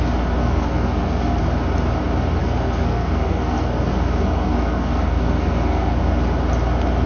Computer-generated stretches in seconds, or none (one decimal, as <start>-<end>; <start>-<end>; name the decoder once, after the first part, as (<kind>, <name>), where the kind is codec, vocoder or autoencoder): 0.4-1.4 (codec, SNAC); 2.4-6.0